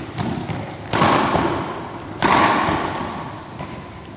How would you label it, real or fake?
real